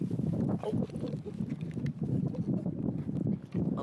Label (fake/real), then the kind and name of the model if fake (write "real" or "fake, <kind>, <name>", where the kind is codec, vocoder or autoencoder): real